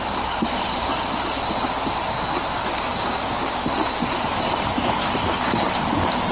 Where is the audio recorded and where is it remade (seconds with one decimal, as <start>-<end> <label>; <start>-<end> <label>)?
0.0-2.9 recorded; 2.9-3.6 remade; 3.6-6.3 recorded